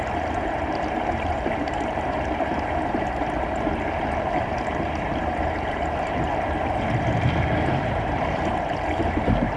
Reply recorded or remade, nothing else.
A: remade